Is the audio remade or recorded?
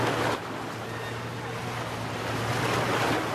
recorded